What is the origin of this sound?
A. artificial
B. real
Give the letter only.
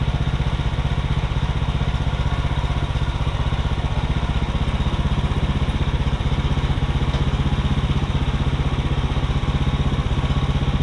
B